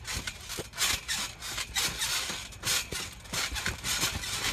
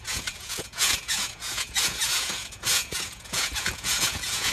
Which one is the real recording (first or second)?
first